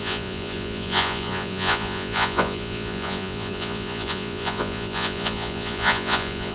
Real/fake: fake